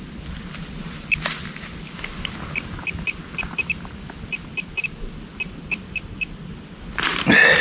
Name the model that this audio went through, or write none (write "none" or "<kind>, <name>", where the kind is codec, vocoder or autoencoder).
none